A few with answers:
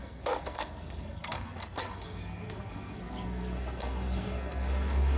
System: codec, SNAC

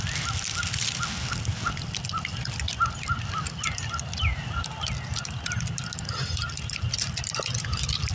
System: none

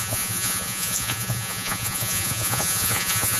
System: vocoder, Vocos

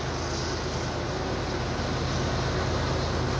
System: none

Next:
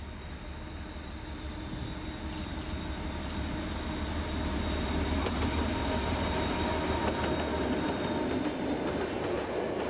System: none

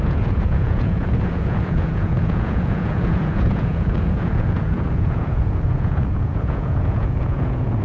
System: vocoder, Vocos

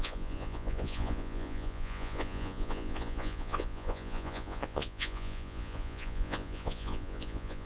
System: vocoder, Vocos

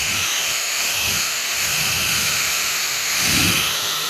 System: autoencoder, DAC-VAE